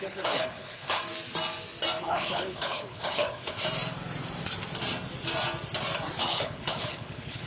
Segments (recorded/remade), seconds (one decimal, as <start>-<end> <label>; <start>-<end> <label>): 0.0-1.0 remade; 1.0-2.0 recorded; 2.0-3.6 remade; 3.6-6.2 recorded; 6.2-7.5 remade